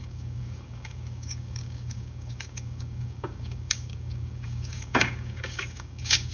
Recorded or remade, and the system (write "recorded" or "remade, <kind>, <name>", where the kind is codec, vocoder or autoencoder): remade, codec, DAC